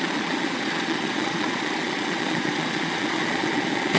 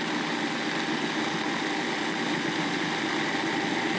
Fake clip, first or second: first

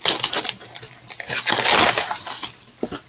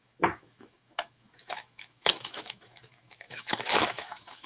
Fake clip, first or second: second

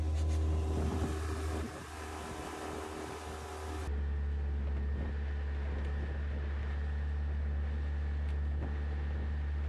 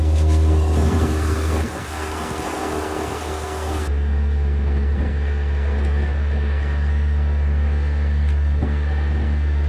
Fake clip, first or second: second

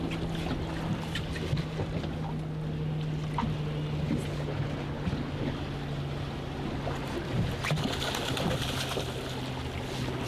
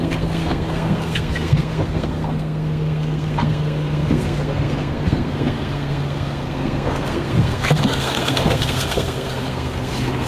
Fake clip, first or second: second